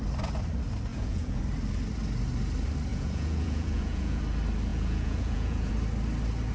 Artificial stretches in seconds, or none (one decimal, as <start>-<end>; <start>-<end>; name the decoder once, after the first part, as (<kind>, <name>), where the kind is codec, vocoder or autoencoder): 0.9-1.4 (vocoder, Vocos); 2.9-4.2; 4.7-5.7